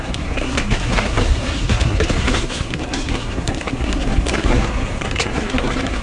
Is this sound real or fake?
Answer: fake